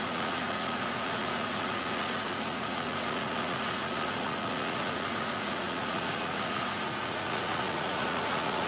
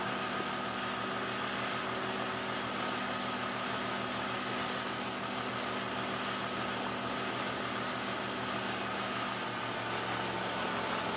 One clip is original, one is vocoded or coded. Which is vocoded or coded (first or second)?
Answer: first